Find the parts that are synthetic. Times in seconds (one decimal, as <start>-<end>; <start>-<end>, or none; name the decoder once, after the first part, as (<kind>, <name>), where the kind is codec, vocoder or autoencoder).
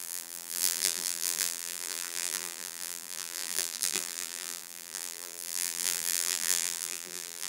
0.0-7.5 (vocoder, BigVGAN v2)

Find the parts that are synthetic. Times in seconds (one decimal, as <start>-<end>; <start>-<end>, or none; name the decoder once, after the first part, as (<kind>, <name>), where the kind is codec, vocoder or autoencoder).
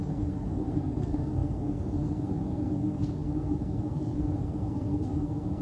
0.0-5.6 (codec, SNAC)